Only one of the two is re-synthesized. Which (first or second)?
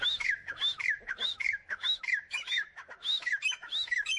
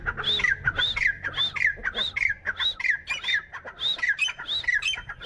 first